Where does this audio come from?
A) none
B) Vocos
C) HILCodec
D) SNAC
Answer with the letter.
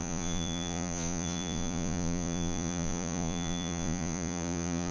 B